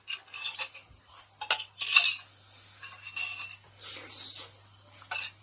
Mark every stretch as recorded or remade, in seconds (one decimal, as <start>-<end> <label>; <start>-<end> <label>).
0.0-5.4 recorded